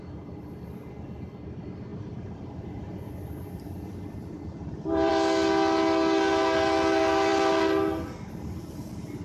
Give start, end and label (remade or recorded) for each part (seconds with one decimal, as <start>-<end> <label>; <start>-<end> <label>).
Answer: 0.0-1.9 recorded; 1.9-5.1 remade; 5.1-9.2 recorded